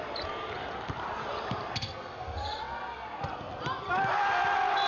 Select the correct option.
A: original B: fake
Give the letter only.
A